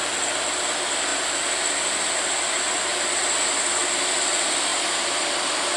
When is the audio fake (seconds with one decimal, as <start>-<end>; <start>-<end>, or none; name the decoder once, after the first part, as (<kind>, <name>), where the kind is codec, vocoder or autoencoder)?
4.7-5.2 (vocoder, BigVGAN v2)